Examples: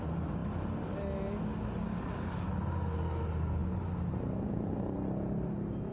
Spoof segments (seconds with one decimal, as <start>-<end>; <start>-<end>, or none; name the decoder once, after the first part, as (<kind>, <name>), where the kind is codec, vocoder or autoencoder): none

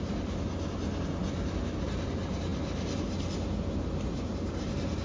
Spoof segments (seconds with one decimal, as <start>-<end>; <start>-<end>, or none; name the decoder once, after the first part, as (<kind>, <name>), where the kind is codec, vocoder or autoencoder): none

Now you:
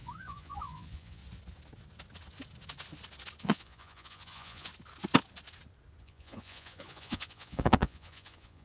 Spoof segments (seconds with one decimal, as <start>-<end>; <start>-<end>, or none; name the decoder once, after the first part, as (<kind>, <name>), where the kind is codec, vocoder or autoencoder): 0.0-1.2 (vocoder, Vocos); 3.4-4.7; 6.0-8.6

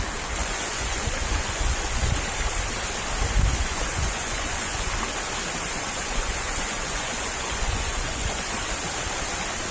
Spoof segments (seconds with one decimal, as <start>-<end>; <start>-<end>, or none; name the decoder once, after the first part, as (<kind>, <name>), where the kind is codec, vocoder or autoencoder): 0.4-2.1 (vocoder, Vocos); 3.5-4.9; 5.7-8.6

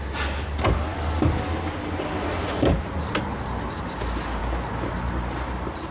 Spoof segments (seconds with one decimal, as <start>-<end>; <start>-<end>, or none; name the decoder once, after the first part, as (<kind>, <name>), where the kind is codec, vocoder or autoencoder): none

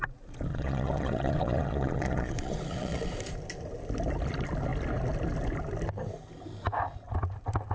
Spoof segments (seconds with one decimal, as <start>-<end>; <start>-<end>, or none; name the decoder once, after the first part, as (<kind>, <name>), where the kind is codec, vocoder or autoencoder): 0.5-3.1 (vocoder, Vocos)